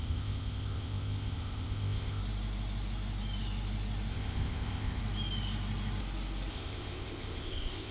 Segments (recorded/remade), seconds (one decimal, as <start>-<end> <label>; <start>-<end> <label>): 0.0-2.2 remade; 2.2-4.1 recorded; 4.1-5.0 remade; 5.0-6.5 recorded; 6.5-7.9 remade

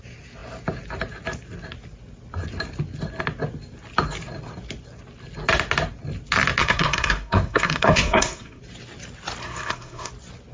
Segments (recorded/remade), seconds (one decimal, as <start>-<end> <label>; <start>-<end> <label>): 0.0-6.6 recorded; 6.6-8.6 remade; 8.6-9.4 recorded; 9.4-10.1 remade; 10.1-10.5 recorded